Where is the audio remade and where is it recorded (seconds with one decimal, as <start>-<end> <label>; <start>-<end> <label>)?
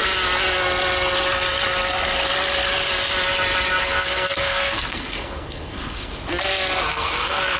0.0-3.8 recorded; 3.8-6.1 remade; 6.1-6.9 recorded; 6.9-7.6 remade